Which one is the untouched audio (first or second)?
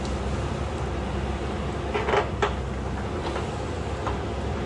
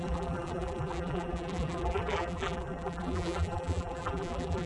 first